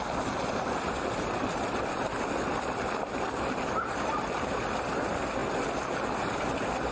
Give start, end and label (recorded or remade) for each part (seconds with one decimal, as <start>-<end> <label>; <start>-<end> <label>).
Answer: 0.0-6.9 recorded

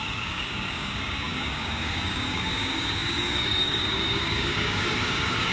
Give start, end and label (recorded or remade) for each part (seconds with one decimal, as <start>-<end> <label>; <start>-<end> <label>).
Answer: 0.0-5.5 remade

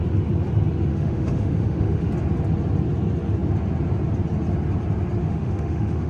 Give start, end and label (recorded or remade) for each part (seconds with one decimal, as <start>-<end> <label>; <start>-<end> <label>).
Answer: 0.0-0.9 recorded; 0.9-2.1 remade; 2.1-5.2 recorded; 5.2-6.1 remade

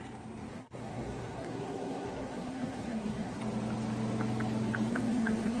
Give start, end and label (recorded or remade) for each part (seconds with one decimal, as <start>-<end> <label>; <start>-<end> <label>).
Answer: 0.0-0.5 recorded; 0.5-3.4 remade; 3.4-4.9 recorded; 4.9-5.6 remade

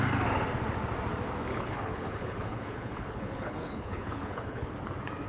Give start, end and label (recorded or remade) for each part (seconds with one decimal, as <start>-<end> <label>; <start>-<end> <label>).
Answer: 0.0-1.5 recorded; 1.5-4.7 remade; 4.7-5.3 recorded

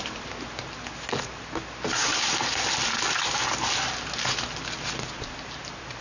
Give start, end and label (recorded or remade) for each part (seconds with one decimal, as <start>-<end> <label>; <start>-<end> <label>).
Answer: 0.0-6.0 recorded

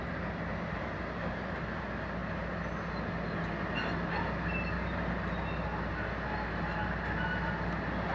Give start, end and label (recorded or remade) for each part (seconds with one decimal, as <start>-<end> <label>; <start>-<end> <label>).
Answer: 0.0-8.1 recorded

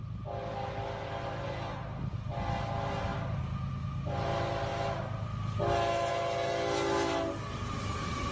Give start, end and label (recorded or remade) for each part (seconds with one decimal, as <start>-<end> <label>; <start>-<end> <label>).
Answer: 0.0-8.3 recorded